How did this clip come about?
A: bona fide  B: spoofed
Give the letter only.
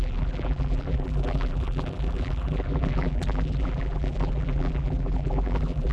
B